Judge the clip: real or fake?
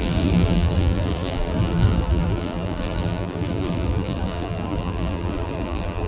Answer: fake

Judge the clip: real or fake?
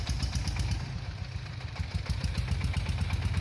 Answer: real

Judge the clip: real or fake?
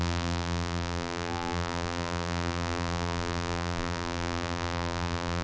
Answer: fake